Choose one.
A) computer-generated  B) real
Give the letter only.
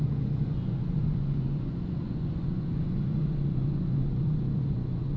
A